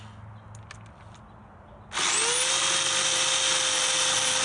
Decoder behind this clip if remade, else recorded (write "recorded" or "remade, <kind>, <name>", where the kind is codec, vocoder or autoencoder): recorded